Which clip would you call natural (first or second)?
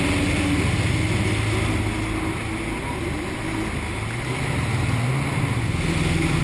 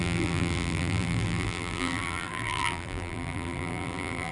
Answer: first